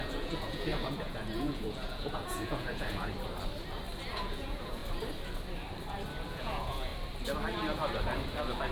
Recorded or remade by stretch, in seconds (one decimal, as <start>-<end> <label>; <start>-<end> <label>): 0.0-3.1 remade; 3.1-4.1 recorded; 4.1-4.8 remade; 4.8-6.3 recorded; 6.3-6.9 remade; 6.9-8.7 recorded